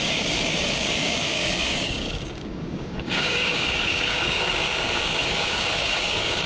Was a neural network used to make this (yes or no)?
yes